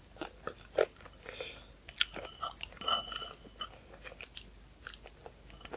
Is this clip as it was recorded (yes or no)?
yes